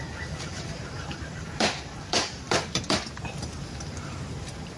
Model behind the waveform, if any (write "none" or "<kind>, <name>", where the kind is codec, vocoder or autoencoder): vocoder, BigVGAN v2